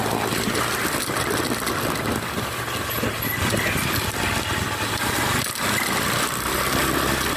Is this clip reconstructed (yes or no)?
no